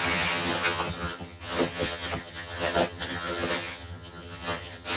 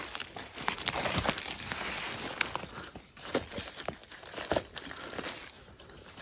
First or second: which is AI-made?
first